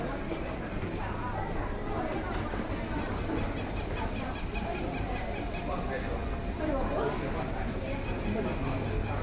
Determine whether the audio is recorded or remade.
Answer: recorded